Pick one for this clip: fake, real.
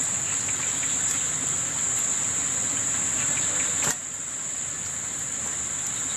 real